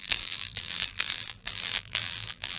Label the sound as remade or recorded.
remade